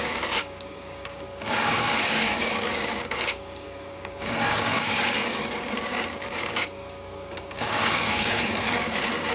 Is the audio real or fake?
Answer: fake